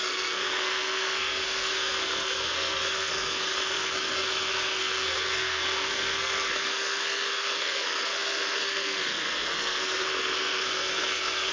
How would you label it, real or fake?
fake